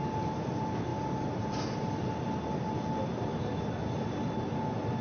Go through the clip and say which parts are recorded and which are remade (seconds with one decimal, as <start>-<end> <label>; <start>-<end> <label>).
0.0-5.0 recorded